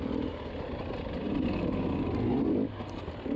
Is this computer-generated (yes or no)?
no